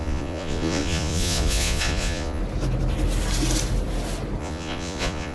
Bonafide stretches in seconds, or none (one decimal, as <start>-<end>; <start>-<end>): 2.4-4.4